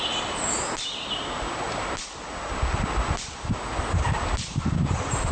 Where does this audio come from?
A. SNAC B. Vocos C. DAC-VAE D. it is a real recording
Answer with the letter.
D